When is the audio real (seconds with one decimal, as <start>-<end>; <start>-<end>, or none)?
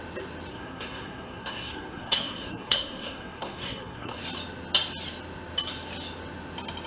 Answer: 0.0-0.5; 4.2-6.9